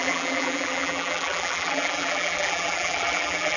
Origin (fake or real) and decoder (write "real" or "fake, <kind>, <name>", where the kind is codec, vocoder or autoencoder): fake, vocoder, BigVGAN v2